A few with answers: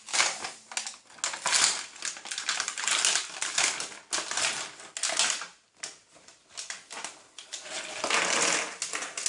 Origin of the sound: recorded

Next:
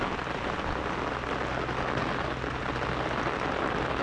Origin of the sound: recorded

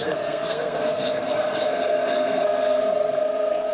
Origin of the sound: remade